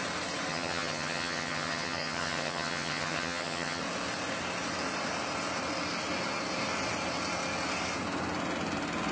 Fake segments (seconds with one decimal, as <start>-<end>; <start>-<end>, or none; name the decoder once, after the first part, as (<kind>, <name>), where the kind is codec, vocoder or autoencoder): 0.5-3.8 (vocoder, HiFi-GAN)

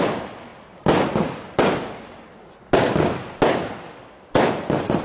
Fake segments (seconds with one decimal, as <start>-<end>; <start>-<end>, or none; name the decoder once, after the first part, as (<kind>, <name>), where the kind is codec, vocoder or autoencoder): none

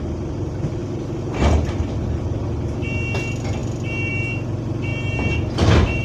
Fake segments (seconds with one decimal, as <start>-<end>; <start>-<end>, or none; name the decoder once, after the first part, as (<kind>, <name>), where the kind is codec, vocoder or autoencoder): none

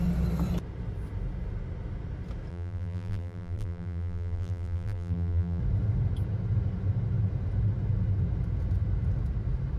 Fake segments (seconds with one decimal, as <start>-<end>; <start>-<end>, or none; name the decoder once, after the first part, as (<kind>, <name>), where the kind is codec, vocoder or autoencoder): 2.5-5.6 (vocoder, BigVGAN v2)

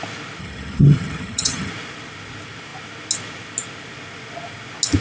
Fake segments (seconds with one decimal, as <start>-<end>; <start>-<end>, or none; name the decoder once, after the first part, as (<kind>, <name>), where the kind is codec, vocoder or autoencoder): 0.4-1.7 (vocoder, HiFi-GAN)